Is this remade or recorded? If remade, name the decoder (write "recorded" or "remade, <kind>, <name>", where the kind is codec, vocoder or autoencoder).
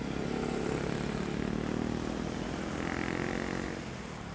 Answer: recorded